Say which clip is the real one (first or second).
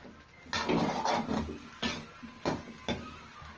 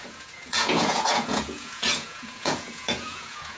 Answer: first